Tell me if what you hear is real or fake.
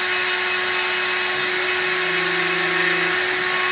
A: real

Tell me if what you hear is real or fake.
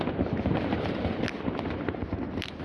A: real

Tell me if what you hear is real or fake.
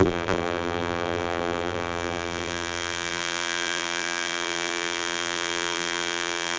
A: fake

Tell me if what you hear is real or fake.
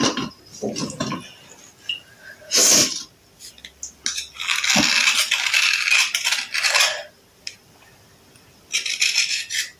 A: real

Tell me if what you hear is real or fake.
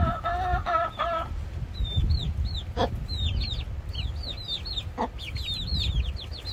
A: real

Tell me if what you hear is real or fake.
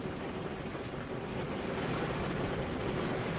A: real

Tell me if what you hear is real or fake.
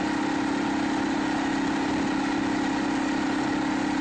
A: real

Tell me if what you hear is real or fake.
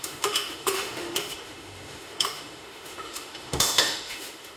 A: fake